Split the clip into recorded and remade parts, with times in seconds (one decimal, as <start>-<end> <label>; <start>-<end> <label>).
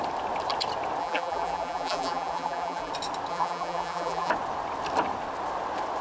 0.0-1.0 recorded; 1.0-2.9 remade; 2.9-3.3 recorded; 3.3-4.3 remade; 4.3-6.0 recorded